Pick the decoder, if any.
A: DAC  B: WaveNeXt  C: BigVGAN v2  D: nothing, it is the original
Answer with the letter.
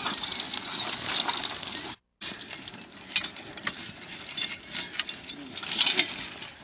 D